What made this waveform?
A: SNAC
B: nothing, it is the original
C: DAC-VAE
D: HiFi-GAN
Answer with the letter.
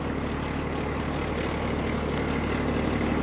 B